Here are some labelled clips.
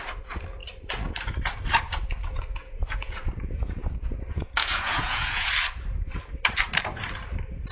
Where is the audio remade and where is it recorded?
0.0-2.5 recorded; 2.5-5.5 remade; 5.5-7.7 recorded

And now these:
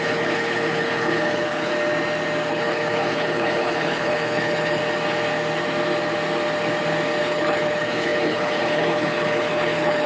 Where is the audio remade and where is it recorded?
0.0-1.7 remade; 1.7-2.5 recorded; 2.5-4.8 remade; 4.8-7.2 recorded; 7.2-10.1 remade

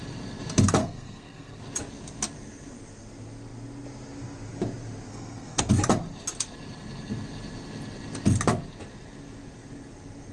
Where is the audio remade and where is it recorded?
0.0-0.8 recorded; 0.8-1.6 remade; 1.6-5.1 recorded; 5.1-5.6 remade; 5.6-10.3 recorded

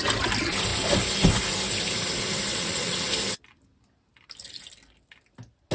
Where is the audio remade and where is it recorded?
0.0-2.5 recorded; 2.5-3.1 remade; 3.1-5.7 recorded